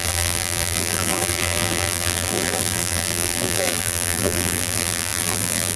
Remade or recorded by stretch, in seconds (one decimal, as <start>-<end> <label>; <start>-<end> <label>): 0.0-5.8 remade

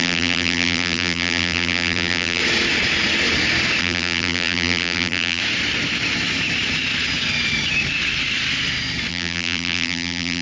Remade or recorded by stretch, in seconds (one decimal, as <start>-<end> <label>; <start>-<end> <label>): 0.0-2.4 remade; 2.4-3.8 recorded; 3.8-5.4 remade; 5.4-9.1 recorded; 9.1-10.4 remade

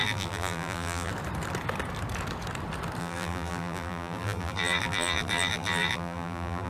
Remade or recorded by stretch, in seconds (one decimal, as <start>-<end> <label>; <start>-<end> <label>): 0.0-1.1 remade; 1.1-3.0 recorded; 3.0-6.7 remade

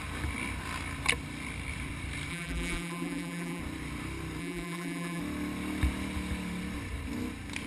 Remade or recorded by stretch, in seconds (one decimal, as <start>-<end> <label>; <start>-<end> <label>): 0.0-2.3 recorded; 2.3-3.6 remade; 3.6-4.4 recorded; 4.4-5.2 remade; 5.2-7.7 recorded